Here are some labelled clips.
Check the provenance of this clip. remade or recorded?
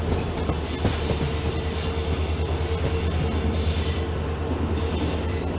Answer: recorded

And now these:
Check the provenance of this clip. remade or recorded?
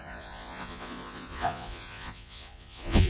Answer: remade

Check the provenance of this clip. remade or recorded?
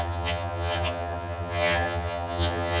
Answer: remade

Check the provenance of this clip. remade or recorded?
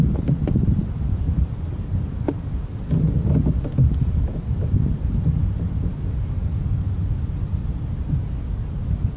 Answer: recorded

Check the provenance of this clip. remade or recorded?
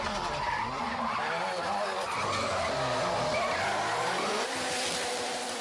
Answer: recorded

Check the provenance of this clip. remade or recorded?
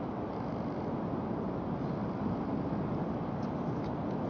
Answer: recorded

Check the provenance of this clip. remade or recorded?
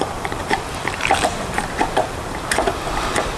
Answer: remade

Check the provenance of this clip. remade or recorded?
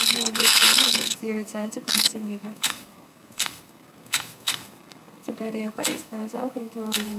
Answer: remade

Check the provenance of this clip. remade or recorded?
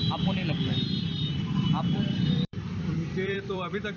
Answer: remade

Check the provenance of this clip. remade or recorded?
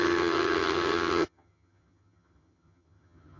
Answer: remade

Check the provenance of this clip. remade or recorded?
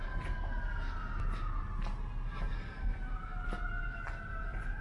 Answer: recorded